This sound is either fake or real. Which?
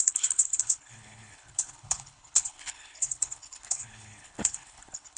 fake